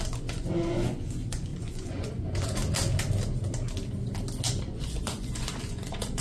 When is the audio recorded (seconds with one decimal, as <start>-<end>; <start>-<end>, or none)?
2.6-4.5